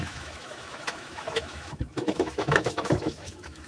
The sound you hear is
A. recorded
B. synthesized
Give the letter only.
B